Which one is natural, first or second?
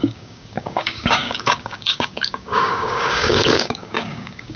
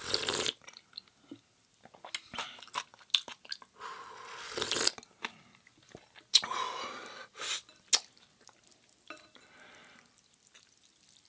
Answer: second